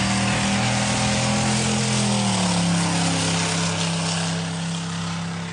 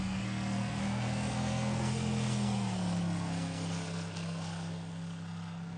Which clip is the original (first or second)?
first